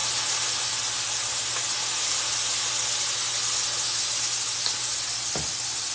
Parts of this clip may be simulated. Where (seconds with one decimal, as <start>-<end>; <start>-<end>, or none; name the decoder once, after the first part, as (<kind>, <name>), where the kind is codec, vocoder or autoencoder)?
none